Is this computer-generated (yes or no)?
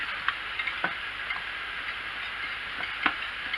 no